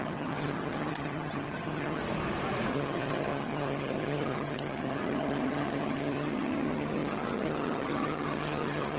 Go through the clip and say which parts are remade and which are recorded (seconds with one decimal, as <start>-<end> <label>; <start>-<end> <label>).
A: 0.0-2.0 remade; 2.0-2.7 recorded; 2.7-9.0 remade